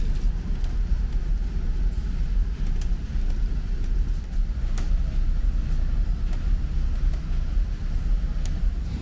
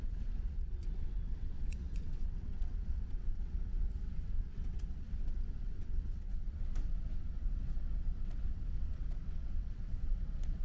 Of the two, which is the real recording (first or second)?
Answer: first